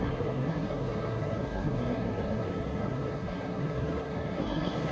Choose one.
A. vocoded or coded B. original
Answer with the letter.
A